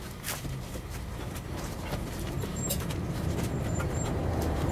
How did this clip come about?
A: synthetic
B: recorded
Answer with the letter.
A